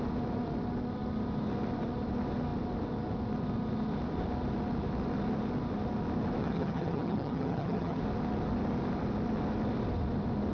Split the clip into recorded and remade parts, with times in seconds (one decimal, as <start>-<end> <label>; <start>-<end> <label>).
0.0-6.4 recorded; 6.4-8.0 remade; 8.0-10.5 recorded